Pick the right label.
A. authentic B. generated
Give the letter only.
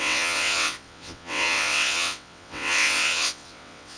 B